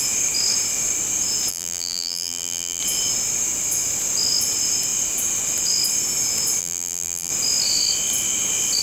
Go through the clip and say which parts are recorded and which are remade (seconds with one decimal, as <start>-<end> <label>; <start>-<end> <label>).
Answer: 0.0-1.5 recorded; 1.5-2.8 remade; 2.8-6.6 recorded; 6.6-7.3 remade; 7.3-8.8 recorded